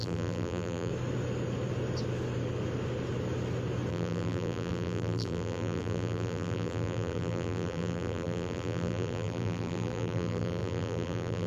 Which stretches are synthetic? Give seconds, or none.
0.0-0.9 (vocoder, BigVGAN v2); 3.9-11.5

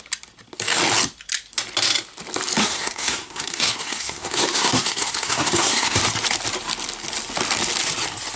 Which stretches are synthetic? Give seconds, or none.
2.6-6.0 (codec, SNAC)

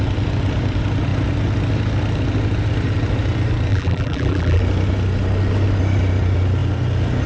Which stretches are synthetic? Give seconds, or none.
3.7-4.6 (vocoder, BigVGAN v2)

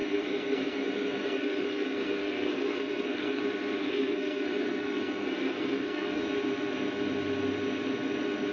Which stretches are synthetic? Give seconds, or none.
0.0-3.4 (codec, SNAC); 3.8-6.2

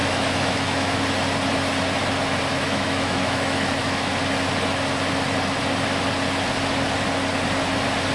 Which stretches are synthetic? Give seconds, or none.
0.0-1.0 (autoencoder, DAC-VAE); 2.5-4.1

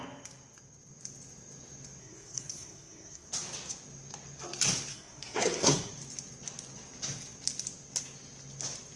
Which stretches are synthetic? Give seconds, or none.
2.0-3.3 (codec, SNAC); 4.9-5.9